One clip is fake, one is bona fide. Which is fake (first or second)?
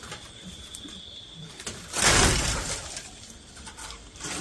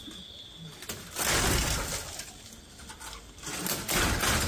first